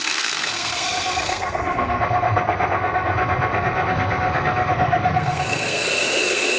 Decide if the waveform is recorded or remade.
remade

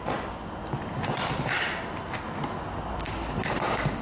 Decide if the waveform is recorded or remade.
recorded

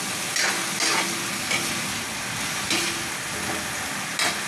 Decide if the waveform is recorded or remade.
recorded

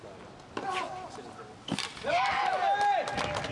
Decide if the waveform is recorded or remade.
recorded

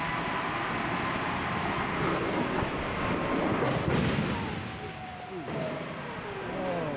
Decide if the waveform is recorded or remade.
recorded